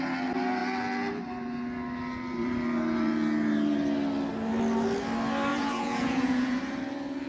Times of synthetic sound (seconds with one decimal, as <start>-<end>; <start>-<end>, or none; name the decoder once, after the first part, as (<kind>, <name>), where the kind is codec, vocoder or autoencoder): 5.5-6.6 (vocoder, Vocos)